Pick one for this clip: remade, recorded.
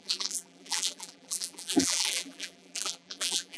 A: remade